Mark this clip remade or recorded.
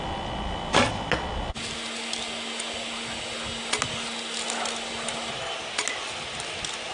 recorded